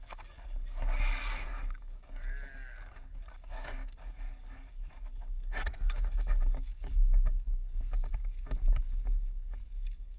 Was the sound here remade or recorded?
remade